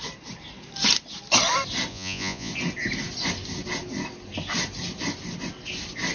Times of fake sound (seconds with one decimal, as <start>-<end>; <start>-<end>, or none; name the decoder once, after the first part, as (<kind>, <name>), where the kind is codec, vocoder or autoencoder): 1.9-2.5 (vocoder, Vocos)